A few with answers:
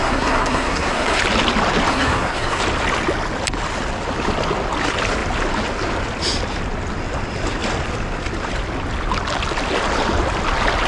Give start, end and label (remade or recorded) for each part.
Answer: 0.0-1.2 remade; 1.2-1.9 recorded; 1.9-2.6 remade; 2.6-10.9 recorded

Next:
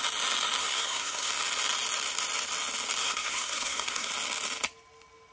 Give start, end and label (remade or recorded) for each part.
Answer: 0.0-0.6 recorded; 0.6-1.3 remade; 1.3-3.0 recorded; 3.0-4.1 remade; 4.1-5.3 recorded

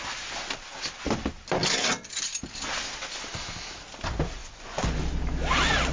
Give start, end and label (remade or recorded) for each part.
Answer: 0.0-4.4 recorded; 4.4-5.0 remade; 5.0-5.9 recorded